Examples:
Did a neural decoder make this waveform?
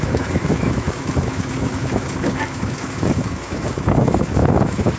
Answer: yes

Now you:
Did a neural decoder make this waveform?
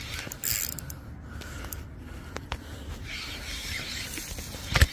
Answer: no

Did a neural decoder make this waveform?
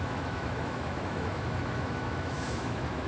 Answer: yes